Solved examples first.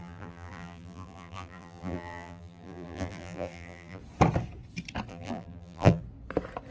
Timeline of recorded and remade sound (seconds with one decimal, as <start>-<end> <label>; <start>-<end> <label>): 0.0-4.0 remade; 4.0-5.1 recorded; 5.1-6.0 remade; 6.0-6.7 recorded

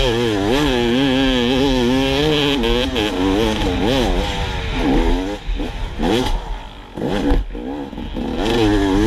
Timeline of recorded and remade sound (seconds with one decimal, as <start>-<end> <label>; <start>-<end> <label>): 0.0-9.1 recorded

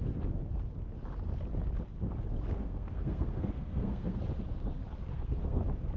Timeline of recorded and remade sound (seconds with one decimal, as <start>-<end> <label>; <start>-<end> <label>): 0.0-2.6 recorded; 2.6-4.2 remade; 4.2-5.1 recorded; 5.1-5.6 remade; 5.6-6.0 recorded

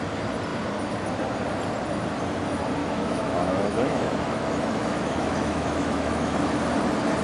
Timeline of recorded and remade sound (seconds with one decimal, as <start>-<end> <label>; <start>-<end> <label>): 0.0-2.8 recorded; 2.8-6.6 remade; 6.6-7.2 recorded

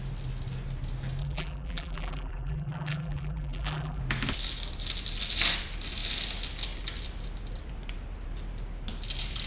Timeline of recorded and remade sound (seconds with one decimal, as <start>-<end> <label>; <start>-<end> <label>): 0.0-1.2 recorded; 1.2-4.0 remade; 4.0-9.5 recorded

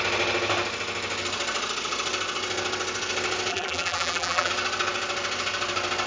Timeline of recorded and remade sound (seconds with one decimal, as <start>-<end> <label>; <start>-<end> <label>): 0.0-3.5 recorded; 3.5-4.5 remade; 4.5-6.1 recorded